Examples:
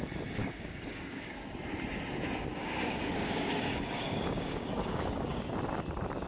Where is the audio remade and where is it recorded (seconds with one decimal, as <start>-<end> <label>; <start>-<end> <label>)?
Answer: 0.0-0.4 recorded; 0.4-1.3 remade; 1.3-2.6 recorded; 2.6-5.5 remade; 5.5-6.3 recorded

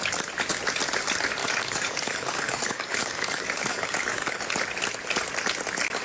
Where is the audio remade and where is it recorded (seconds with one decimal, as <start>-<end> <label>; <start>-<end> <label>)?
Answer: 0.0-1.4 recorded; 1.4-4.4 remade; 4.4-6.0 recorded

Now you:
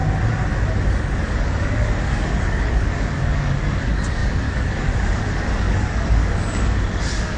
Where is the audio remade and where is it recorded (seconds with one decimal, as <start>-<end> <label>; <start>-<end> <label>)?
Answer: 0.0-0.9 recorded; 0.9-7.4 remade

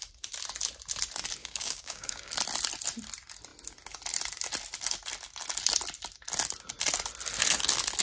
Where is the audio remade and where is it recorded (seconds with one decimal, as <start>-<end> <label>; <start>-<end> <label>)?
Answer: 0.0-1.4 recorded; 1.4-2.3 remade; 2.3-8.0 recorded